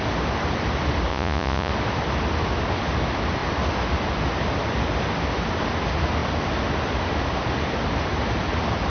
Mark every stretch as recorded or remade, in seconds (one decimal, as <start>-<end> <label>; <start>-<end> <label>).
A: 0.0-1.1 recorded; 1.1-1.7 remade; 1.7-8.9 recorded